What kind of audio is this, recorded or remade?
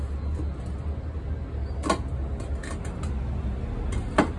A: recorded